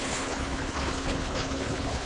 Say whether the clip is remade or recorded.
remade